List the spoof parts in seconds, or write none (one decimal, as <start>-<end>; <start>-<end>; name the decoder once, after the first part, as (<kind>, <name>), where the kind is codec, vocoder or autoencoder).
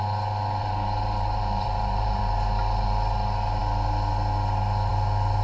0.6-2.2 (vocoder, BigVGAN v2)